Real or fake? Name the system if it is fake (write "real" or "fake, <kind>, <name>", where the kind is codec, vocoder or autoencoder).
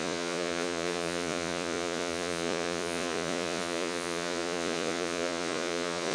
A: fake, vocoder, Vocos